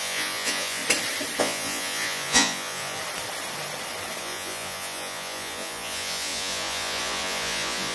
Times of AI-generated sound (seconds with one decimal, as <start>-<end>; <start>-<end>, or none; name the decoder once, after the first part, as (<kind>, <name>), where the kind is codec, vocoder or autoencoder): 0.0-0.8 (vocoder, Vocos); 1.4-3.0; 4.2-7.9